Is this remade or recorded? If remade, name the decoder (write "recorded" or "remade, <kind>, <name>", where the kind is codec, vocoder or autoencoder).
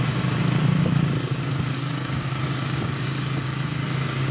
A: remade, codec, DAC